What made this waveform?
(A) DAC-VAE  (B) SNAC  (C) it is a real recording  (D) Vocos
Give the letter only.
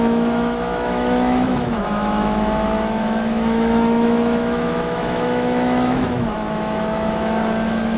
A